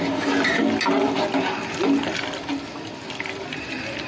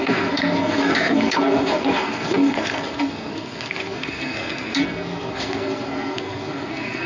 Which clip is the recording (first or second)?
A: first